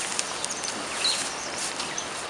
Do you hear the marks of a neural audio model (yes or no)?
no